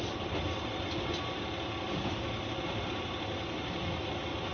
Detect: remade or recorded recorded